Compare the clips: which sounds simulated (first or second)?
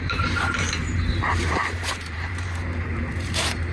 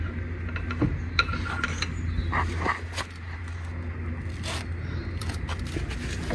first